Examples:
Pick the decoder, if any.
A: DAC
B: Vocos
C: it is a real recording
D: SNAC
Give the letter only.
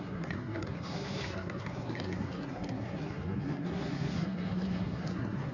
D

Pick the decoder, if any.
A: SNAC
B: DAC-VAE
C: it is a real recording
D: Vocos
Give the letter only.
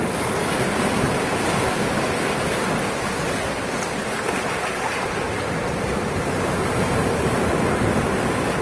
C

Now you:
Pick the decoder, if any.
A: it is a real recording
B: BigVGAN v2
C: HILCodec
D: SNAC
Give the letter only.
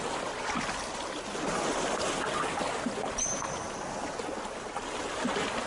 A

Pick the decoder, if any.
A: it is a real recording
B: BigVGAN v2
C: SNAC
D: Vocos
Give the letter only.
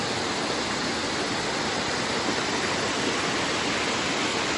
A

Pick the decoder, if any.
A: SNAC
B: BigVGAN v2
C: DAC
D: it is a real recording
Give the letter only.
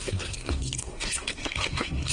A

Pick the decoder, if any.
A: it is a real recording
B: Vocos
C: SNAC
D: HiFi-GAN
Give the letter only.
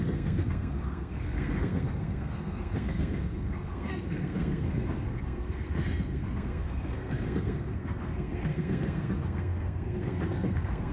C